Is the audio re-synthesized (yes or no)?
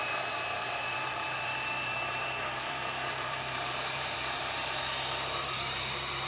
yes